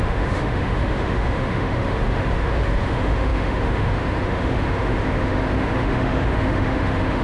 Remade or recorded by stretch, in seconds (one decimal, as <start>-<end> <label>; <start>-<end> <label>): 0.0-7.2 remade